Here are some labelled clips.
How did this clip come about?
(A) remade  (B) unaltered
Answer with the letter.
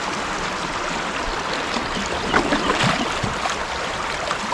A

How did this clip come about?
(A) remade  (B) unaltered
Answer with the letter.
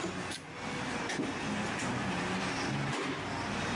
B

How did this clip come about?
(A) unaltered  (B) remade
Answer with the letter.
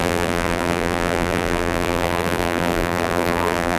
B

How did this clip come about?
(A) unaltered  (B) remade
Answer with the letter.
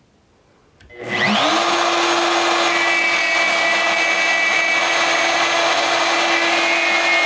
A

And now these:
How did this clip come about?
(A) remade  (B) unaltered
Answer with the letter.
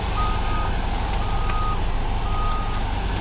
B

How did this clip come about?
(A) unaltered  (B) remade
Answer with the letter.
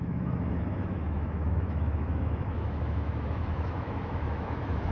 B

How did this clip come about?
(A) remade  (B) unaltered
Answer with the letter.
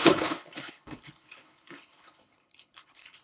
A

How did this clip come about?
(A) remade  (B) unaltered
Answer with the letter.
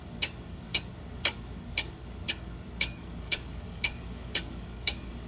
A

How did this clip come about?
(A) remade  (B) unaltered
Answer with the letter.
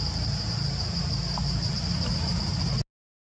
B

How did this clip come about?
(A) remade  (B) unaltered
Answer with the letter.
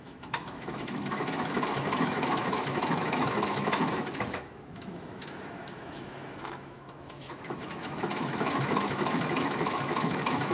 A